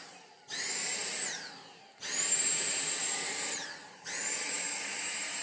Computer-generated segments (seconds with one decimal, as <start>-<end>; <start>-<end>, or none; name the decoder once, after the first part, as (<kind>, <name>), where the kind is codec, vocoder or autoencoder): 0.0-1.0 (vocoder, BigVGAN v2); 3.0-5.4